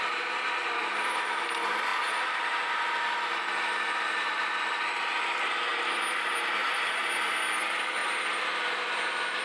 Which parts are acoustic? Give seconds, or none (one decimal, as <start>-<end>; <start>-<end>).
0.0-9.4